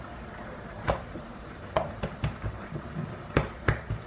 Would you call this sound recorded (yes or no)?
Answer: no